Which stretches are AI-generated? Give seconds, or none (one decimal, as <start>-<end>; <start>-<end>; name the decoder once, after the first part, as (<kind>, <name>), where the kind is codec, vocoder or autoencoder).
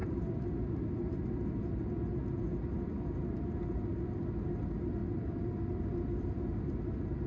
none